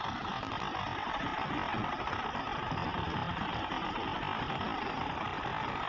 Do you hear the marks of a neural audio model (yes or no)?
no